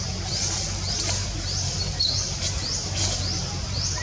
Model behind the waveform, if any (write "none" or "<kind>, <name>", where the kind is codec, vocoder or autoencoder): none